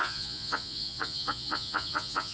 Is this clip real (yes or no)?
no